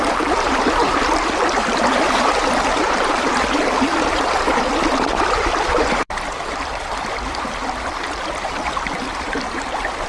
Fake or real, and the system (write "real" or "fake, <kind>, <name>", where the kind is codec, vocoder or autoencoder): fake, vocoder, BigVGAN v2